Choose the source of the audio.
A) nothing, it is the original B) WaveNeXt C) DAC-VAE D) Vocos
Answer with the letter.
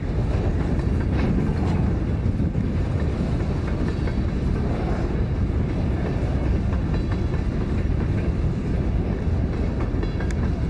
A